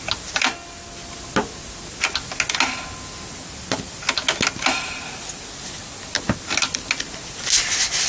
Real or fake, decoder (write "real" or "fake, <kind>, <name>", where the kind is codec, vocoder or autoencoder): real